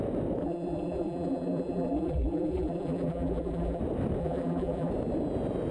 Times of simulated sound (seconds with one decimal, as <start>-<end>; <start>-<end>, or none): 0.4-3.8; 4.2-4.9